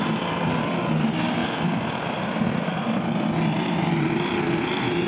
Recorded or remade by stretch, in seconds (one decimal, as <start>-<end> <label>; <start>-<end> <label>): 0.0-5.1 recorded

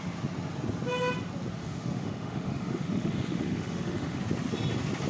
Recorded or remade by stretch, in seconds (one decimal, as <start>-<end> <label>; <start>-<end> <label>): 0.0-1.6 recorded; 1.6-4.2 remade; 4.2-5.1 recorded